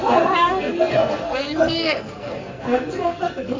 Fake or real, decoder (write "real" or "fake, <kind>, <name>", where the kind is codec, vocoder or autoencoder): fake, codec, SNAC